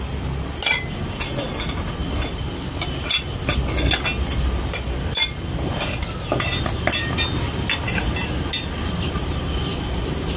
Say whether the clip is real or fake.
real